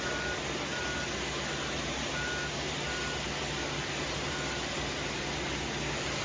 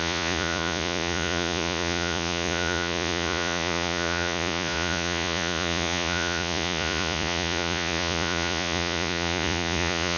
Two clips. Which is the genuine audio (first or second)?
first